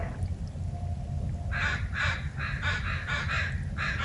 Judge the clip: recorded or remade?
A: recorded